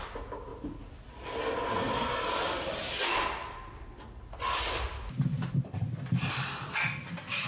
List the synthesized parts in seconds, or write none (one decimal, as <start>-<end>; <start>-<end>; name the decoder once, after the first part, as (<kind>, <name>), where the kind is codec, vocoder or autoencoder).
none